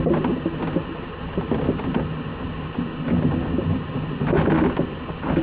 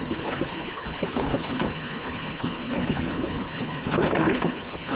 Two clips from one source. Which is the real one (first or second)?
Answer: first